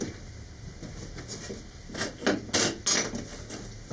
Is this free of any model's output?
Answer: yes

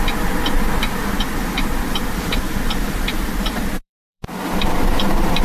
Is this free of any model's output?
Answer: no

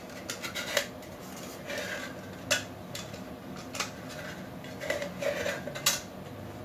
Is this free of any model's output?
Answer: yes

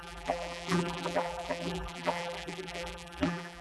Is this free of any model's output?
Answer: no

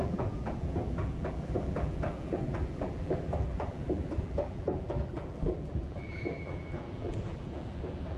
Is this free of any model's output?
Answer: no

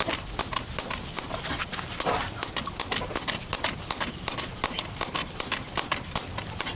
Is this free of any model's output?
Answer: yes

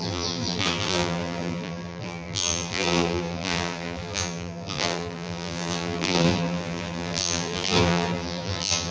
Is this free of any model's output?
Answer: no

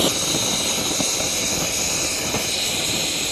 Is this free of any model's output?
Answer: yes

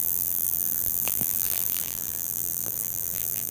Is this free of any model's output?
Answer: no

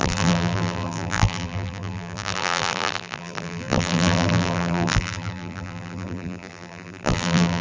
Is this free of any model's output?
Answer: no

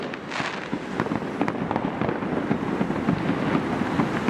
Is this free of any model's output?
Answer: yes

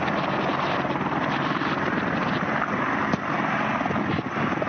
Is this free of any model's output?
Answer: yes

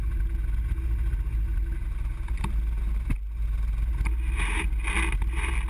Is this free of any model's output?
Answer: yes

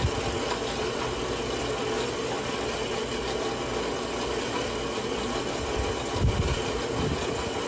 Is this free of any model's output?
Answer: yes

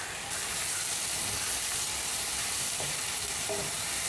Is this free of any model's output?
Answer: no